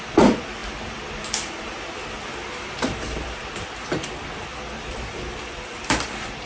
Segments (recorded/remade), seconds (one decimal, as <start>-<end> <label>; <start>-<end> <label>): 0.0-6.5 remade